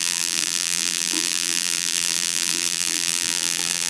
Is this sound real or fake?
fake